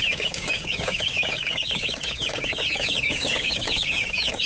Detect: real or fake fake